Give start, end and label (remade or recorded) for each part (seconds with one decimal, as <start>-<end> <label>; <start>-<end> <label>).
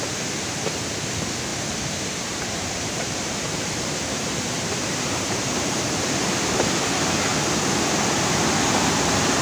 0.0-1.5 recorded; 1.5-6.0 remade; 6.0-9.4 recorded